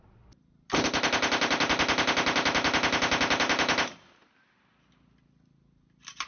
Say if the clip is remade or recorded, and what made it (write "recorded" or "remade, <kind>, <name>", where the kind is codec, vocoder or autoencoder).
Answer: recorded